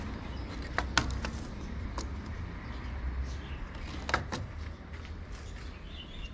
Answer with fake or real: real